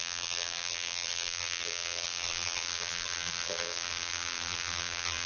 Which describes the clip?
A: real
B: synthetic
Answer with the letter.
B